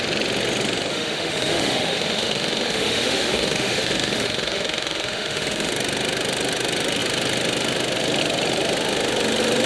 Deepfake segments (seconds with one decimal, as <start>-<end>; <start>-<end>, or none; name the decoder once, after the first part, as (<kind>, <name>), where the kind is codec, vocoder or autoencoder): 0.9-5.7 (autoencoder, DAC-VAE)